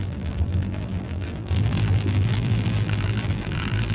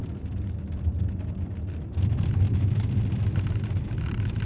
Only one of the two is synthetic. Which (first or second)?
first